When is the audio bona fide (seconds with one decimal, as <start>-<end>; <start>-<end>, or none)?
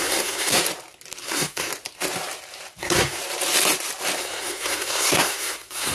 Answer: 0.6-1.2; 1.7-2.8; 3.2-4.2